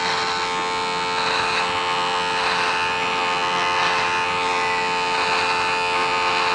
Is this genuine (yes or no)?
yes